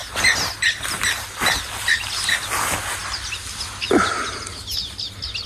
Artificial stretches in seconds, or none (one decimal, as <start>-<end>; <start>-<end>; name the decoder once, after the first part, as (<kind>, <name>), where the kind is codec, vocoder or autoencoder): none